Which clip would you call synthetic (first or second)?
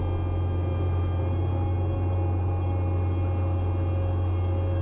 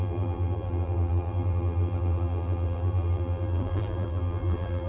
second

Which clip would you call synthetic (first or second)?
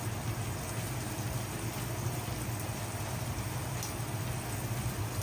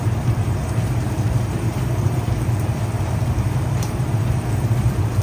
second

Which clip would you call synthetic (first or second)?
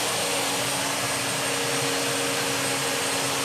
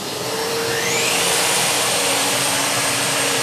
second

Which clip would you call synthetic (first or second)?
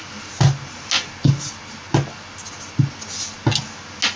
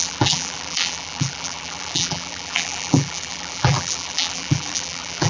second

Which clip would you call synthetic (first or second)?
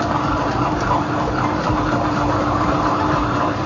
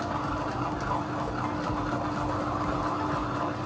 first